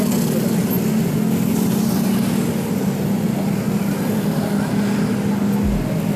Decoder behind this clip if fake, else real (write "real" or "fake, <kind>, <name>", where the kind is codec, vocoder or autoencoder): real